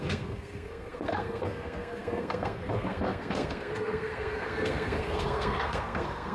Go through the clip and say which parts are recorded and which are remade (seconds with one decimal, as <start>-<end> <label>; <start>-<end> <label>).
0.0-6.3 remade